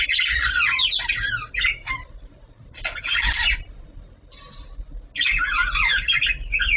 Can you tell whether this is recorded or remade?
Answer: recorded